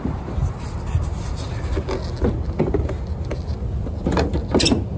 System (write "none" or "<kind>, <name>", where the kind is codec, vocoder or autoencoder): none